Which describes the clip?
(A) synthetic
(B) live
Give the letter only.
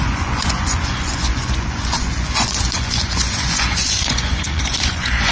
A